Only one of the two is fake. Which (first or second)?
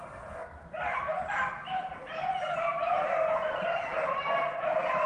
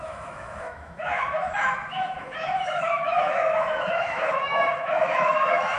second